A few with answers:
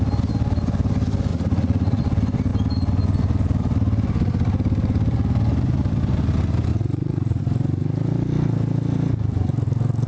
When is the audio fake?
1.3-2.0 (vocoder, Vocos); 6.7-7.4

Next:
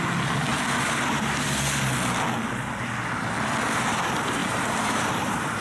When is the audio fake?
none

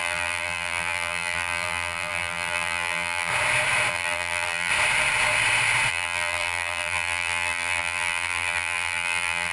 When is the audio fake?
0.0-3.3 (vocoder, BigVGAN v2); 3.9-4.7; 5.9-9.5

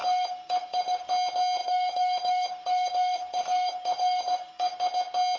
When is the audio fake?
0.0-1.1 (codec, DAC); 1.6-4.8

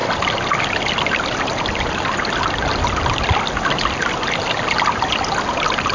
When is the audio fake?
none

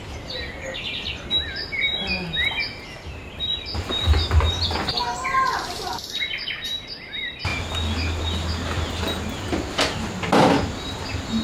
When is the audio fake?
none

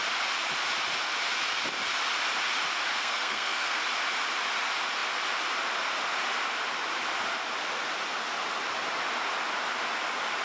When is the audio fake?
2.9-3.8 (codec, SNAC)

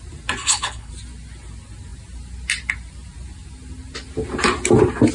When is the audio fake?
0.4-0.9 (codec, HILCodec)